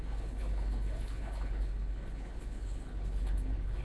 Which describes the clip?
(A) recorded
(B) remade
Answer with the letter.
B